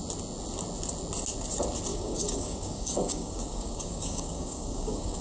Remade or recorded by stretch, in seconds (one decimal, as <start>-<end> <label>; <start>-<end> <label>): 0.0-1.9 recorded; 1.9-5.2 remade

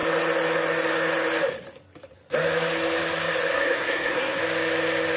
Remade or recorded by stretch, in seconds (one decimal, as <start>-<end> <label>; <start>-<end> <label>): 0.0-3.5 recorded; 3.5-4.4 remade; 4.4-5.2 recorded

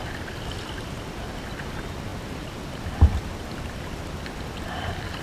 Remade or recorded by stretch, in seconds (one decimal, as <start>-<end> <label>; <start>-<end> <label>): 0.0-5.2 recorded

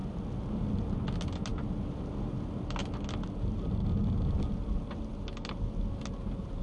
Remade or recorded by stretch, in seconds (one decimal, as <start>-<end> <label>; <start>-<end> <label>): 0.0-6.6 recorded

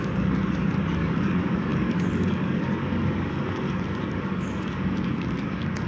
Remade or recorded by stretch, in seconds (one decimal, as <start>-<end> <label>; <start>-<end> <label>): 0.0-5.9 remade

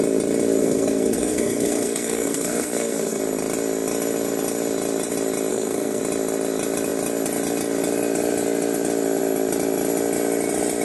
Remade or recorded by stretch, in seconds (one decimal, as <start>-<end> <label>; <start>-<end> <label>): 0.0-0.6 recorded; 0.6-3.2 remade; 3.2-5.5 recorded; 5.5-6.0 remade; 6.0-10.8 recorded

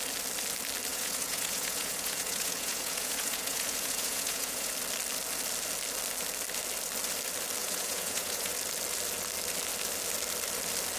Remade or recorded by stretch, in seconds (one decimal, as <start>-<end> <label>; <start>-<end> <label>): 0.0-0.9 recorded; 0.9-4.7 remade; 4.7-7.6 recorded; 7.6-8.5 remade; 8.5-11.0 recorded

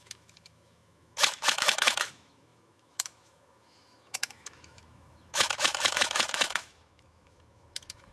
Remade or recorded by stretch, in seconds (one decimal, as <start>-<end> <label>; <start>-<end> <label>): 0.0-8.1 remade